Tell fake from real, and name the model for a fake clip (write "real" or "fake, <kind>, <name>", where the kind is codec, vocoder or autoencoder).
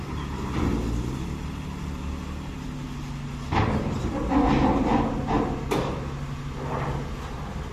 real